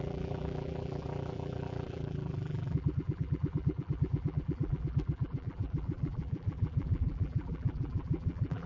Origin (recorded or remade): remade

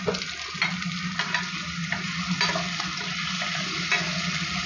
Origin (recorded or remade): recorded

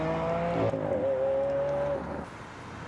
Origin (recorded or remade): recorded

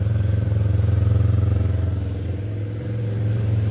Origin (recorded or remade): remade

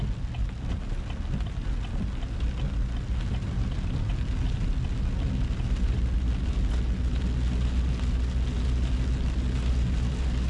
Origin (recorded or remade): recorded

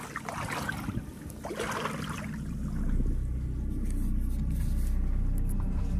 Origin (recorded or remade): recorded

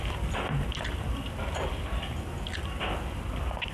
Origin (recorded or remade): remade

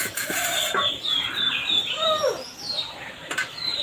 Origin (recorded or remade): remade